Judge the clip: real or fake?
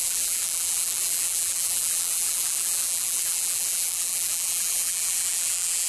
fake